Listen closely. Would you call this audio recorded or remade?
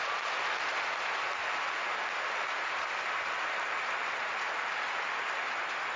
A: recorded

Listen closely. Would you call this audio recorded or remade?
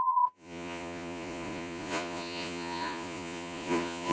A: remade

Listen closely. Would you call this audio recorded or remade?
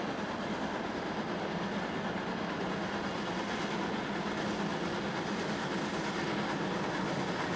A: recorded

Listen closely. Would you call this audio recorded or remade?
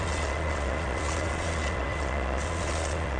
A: remade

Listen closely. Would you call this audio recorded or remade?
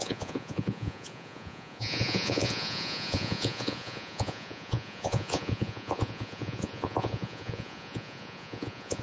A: remade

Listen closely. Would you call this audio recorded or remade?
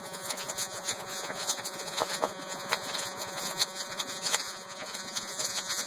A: remade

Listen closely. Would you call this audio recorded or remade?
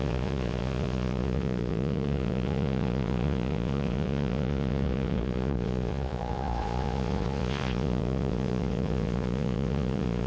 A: remade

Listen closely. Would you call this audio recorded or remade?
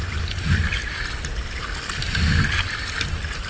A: recorded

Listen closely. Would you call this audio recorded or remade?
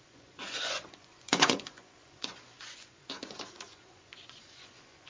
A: remade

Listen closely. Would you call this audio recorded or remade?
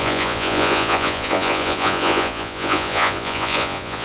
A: remade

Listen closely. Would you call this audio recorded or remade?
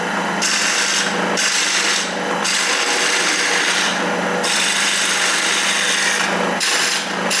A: recorded